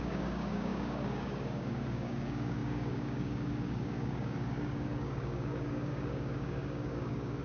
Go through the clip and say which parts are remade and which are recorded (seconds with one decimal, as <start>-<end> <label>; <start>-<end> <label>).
0.0-7.4 remade